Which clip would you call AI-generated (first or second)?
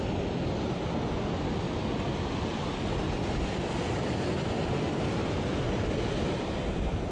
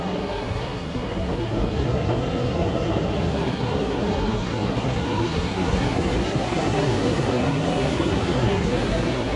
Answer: second